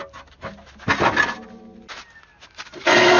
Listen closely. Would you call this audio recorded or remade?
recorded